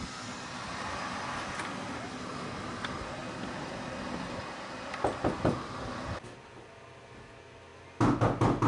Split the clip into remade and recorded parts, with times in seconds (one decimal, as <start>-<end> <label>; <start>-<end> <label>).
0.0-8.7 recorded